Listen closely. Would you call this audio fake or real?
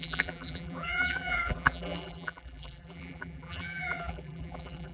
fake